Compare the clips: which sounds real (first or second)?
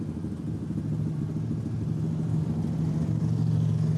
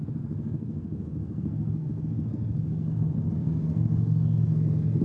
first